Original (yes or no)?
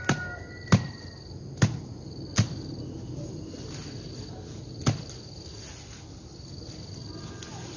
yes